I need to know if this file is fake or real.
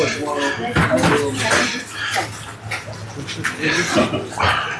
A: real